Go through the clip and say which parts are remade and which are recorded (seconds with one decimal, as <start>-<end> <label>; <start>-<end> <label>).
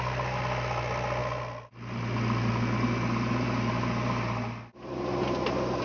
0.0-5.8 recorded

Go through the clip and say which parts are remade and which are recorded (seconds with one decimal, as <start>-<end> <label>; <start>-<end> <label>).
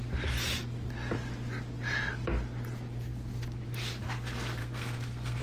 0.0-4.6 recorded; 4.6-5.4 remade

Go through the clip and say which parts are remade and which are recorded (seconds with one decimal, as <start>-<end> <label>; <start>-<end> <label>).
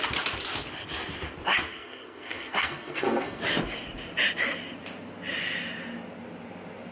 0.0-1.7 recorded; 1.7-3.4 remade; 3.4-6.9 recorded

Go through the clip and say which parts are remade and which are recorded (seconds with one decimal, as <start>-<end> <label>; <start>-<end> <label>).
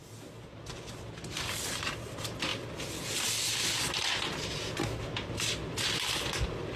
0.0-6.8 recorded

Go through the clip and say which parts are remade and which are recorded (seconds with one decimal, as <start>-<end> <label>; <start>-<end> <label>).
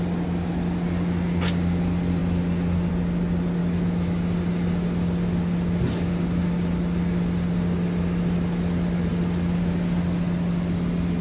0.0-11.2 recorded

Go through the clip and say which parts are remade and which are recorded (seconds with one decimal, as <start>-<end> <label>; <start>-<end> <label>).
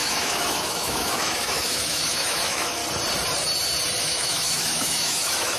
0.0-2.8 remade; 2.8-4.0 recorded; 4.0-5.6 remade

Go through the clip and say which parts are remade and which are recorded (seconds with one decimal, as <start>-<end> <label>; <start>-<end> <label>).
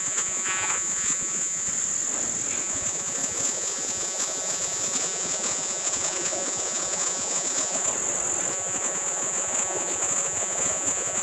0.0-1.7 remade; 1.7-2.6 recorded; 2.6-7.9 remade; 7.9-8.5 recorded; 8.5-11.2 remade